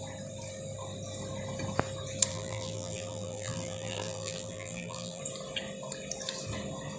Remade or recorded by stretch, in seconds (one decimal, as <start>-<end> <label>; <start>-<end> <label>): 0.0-2.3 recorded; 2.3-5.2 remade; 5.2-7.0 recorded